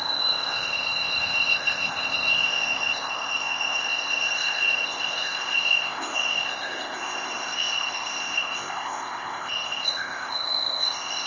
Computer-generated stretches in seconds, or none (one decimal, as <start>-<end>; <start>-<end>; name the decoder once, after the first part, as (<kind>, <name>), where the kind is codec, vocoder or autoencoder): 0.0-11.3 (codec, ZipCodec)